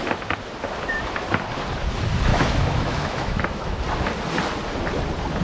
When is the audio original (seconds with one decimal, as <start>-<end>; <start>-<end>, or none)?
0.0-2.3; 3.8-5.4